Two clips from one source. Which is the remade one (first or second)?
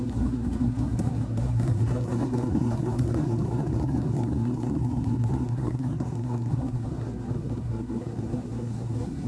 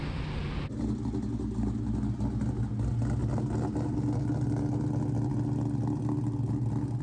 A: first